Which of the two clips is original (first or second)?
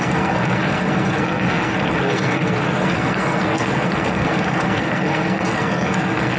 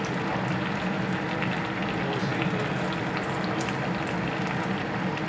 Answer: second